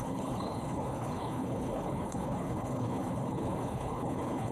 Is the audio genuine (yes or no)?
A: no